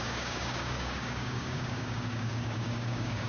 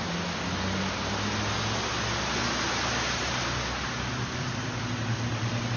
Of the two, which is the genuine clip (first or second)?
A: second